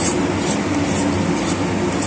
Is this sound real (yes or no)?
yes